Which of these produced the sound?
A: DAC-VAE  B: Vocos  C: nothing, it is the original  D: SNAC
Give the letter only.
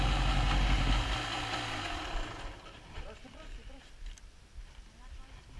C